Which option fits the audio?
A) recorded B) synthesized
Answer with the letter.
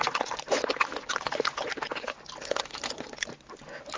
A